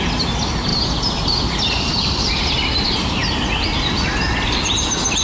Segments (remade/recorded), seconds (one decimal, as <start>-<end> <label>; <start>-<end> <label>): 0.0-5.2 recorded